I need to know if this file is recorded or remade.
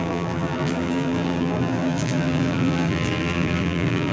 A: remade